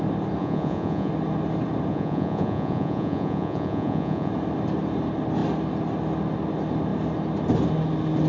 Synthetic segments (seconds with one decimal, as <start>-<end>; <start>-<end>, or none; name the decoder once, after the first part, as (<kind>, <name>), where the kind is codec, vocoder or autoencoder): 0.4-1.1 (vocoder, Vocos); 1.9-4.3